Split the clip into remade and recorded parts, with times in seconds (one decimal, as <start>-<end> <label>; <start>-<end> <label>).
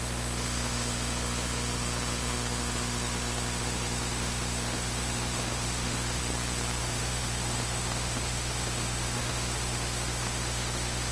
0.0-6.2 remade; 6.2-6.8 recorded; 6.8-11.1 remade